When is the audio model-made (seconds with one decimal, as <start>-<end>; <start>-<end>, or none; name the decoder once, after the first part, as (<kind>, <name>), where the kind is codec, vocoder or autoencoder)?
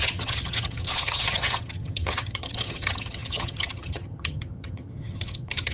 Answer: 0.0-5.7 (vocoder, HiFi-GAN)